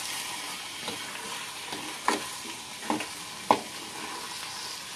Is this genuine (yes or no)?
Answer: yes